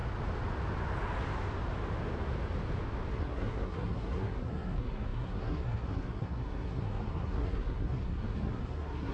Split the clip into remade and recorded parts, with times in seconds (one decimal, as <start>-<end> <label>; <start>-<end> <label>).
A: 0.0-3.1 recorded; 3.1-9.1 remade